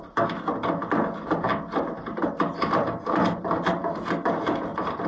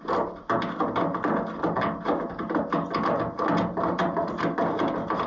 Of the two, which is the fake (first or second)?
first